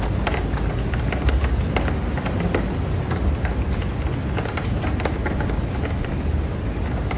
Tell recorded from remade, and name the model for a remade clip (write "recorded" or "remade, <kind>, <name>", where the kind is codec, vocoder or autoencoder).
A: recorded